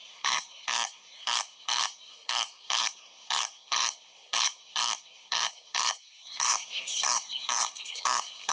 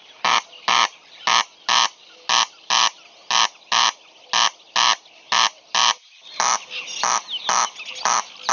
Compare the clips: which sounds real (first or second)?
second